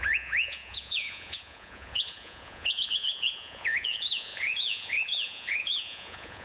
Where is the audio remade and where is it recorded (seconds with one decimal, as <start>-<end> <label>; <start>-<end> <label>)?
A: 0.0-6.4 remade